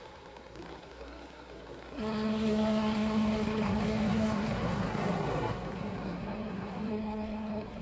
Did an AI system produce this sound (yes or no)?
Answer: yes